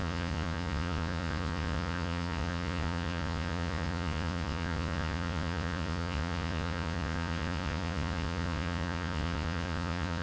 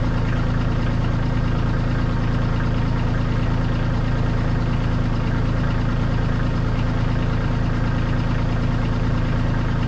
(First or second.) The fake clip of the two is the first